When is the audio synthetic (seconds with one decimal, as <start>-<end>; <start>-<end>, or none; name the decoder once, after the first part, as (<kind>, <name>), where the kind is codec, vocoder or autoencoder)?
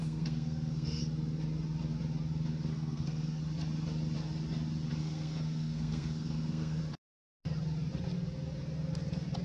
0.0-1.0 (codec, SNAC); 2.7-3.4; 5.0-6.8